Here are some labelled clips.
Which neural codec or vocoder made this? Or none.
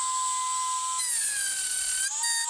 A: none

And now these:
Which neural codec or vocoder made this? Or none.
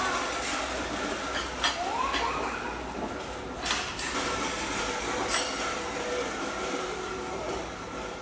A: none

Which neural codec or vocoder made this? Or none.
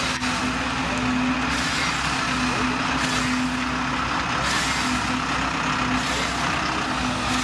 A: none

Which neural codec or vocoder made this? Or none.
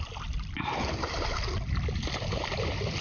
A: none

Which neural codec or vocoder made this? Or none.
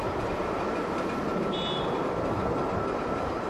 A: vocoder, BigVGAN v2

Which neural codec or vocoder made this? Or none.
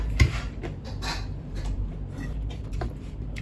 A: vocoder, BigVGAN v2